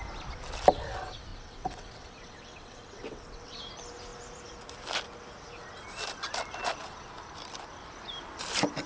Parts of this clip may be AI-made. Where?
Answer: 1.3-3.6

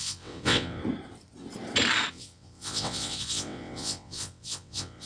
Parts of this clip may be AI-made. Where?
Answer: 0.0-0.8; 2.1-5.1